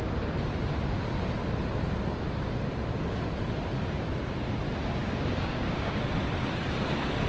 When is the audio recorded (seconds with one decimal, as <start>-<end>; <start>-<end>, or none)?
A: 0.0-5.0; 6.0-7.3